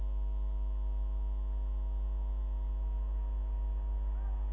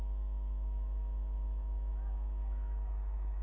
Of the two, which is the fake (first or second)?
second